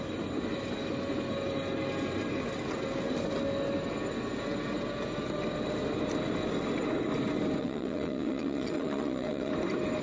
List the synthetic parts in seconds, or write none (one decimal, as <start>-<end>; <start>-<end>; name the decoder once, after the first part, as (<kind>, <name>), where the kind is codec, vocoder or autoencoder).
7.6-9.5 (vocoder, WaveNeXt)